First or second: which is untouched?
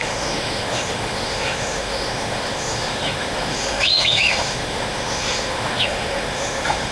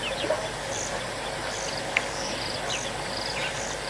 second